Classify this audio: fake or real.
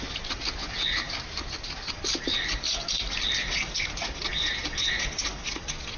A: real